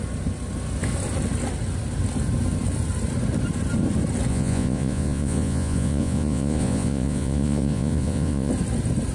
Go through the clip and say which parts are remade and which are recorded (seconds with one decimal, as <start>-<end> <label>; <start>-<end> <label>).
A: 0.0-4.3 recorded; 4.3-8.5 remade; 8.5-9.1 recorded